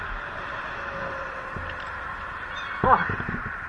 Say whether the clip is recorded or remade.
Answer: recorded